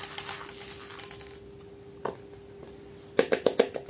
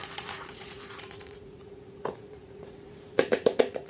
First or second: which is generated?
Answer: second